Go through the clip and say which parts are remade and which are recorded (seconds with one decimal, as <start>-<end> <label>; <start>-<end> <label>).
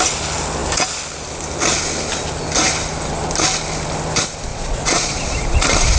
0.0-4.5 recorded; 4.5-5.6 remade; 5.6-6.0 recorded